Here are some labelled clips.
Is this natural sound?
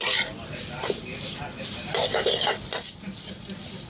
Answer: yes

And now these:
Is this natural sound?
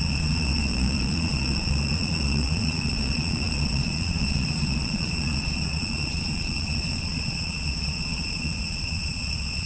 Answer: no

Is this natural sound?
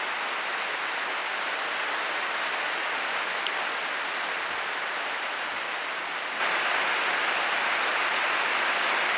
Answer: yes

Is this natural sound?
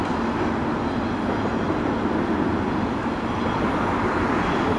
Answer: yes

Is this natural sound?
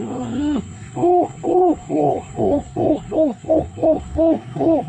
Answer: no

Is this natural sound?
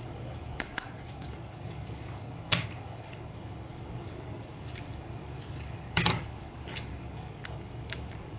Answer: no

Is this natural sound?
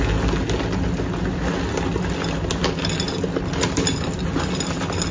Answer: yes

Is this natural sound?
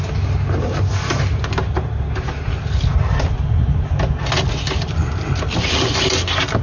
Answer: yes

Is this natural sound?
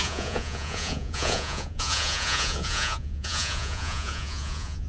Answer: no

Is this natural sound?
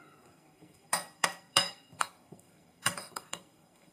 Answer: no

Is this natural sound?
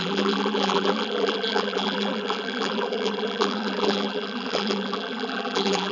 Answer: no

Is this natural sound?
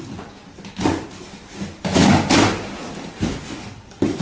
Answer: yes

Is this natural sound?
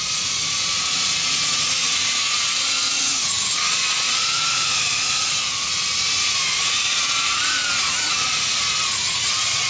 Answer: no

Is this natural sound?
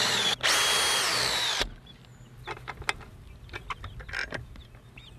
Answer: yes